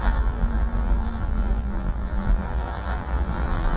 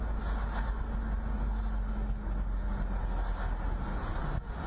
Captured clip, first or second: second